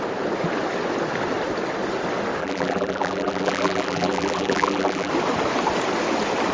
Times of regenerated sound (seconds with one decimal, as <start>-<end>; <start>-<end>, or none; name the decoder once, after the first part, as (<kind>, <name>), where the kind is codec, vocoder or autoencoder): 2.4-5.1 (vocoder, BigVGAN v2)